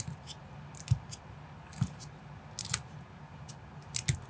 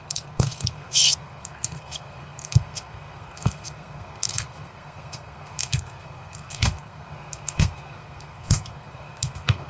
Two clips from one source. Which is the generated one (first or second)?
second